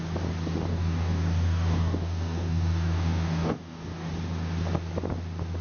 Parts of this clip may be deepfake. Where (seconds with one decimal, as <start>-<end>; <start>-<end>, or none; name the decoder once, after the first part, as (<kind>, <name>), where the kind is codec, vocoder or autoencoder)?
0.7-4.1 (codec, DAC)